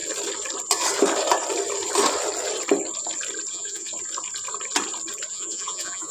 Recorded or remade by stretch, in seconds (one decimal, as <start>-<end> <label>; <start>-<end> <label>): 0.0-3.5 recorded; 3.5-3.9 remade; 3.9-5.3 recorded; 5.3-6.1 remade

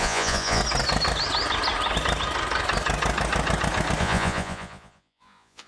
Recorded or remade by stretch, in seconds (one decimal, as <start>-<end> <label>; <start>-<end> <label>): 0.0-0.6 remade; 0.6-4.0 recorded; 4.0-5.7 remade